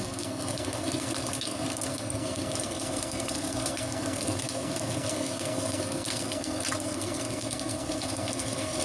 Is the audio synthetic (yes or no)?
yes